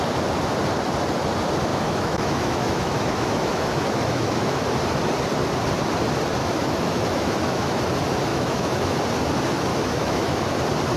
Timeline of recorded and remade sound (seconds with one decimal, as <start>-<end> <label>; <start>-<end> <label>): 0.0-1.7 recorded; 1.7-4.6 remade; 4.6-6.4 recorded; 6.4-7.8 remade; 7.8-8.3 recorded; 8.3-9.0 remade; 9.0-9.7 recorded; 9.7-10.4 remade; 10.4-11.0 recorded